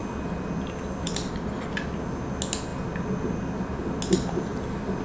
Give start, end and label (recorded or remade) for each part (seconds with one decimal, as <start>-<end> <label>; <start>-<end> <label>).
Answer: 0.0-5.0 recorded